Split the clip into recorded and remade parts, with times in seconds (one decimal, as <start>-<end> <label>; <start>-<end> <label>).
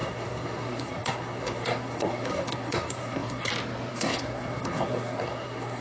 0.0-3.5 remade; 3.5-3.9 recorded; 3.9-5.8 remade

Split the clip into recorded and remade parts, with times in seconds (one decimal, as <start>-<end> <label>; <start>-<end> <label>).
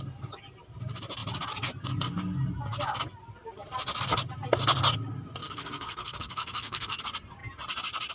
0.0-5.4 recorded; 5.4-7.0 remade; 7.0-8.1 recorded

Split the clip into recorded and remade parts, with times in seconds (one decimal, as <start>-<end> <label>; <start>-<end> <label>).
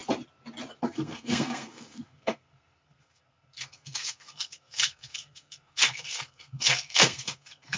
0.0-0.8 recorded; 0.8-7.8 remade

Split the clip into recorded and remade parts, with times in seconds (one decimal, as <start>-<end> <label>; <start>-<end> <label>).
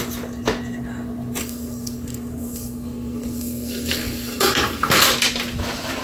0.0-1.4 recorded; 1.4-5.0 remade; 5.0-6.0 recorded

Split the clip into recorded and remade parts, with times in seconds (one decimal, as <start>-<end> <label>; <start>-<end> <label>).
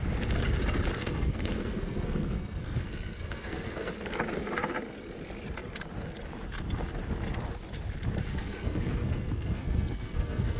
0.0-1.0 recorded; 1.0-3.9 remade; 3.9-8.3 recorded; 8.3-10.6 remade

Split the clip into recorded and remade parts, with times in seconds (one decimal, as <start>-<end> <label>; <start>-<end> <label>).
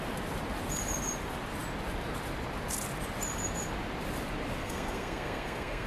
0.0-4.6 recorded; 4.6-5.9 remade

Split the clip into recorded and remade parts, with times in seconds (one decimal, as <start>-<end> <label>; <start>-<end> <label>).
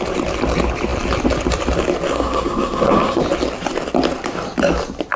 0.0-2.1 recorded; 2.1-3.2 remade; 3.2-5.2 recorded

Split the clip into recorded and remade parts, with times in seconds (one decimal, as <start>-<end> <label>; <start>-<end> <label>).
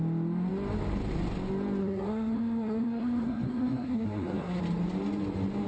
0.0-1.8 recorded; 1.8-4.6 remade; 4.6-5.7 recorded